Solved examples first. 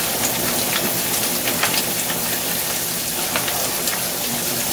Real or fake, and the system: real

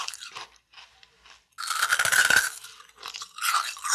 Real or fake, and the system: real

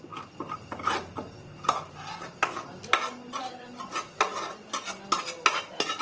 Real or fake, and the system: real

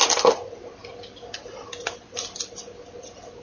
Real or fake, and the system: real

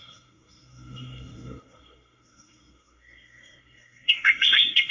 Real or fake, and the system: fake, codec, SNAC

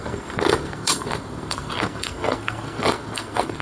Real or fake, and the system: fake, codec, SNAC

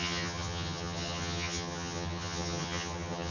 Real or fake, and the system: fake, vocoder, HiFi-GAN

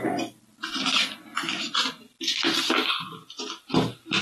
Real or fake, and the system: real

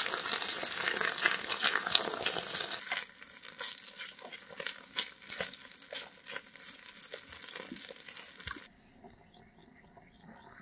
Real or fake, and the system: real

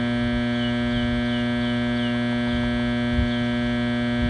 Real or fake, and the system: real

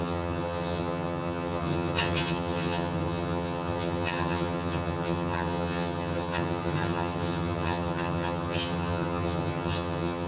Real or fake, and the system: fake, vocoder, HiFi-GAN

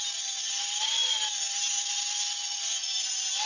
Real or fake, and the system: real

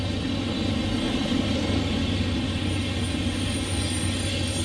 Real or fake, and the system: real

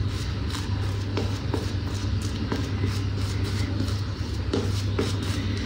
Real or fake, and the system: real